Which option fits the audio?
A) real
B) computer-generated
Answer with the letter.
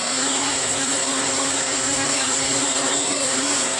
B